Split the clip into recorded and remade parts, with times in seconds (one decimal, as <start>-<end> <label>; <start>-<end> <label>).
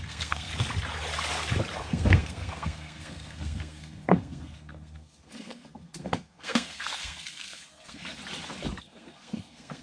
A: 0.0-0.5 remade; 0.5-1.8 recorded; 1.8-8.2 remade; 8.2-8.8 recorded; 8.8-9.8 remade